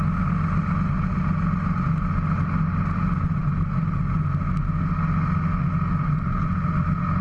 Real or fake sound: real